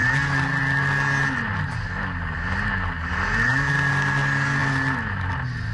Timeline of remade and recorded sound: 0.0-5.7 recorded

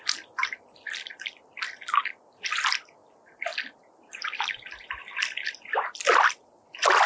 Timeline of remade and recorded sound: 0.0-7.1 recorded

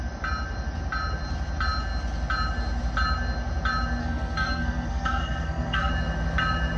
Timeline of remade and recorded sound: 0.0-4.0 recorded; 4.0-5.9 remade; 5.9-6.8 recorded

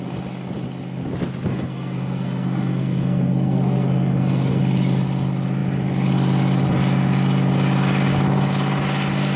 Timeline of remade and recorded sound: 0.0-1.5 recorded; 1.5-4.6 remade; 4.6-9.4 recorded

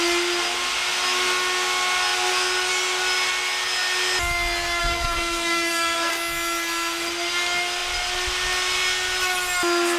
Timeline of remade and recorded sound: 0.0-4.8 recorded; 4.8-6.1 remade; 6.1-10.0 recorded

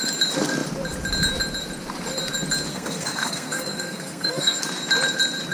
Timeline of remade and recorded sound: 0.0-2.7 recorded; 2.7-4.6 remade; 4.6-5.5 recorded

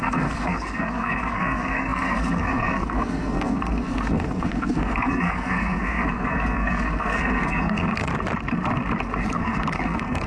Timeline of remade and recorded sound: 0.0-8.1 remade; 8.1-9.3 recorded; 9.3-10.3 remade

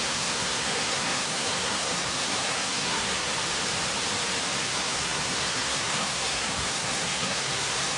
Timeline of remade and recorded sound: 0.0-3.3 remade; 3.3-4.6 recorded; 4.6-8.0 remade